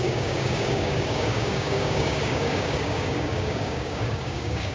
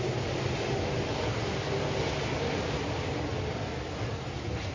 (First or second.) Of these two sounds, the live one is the second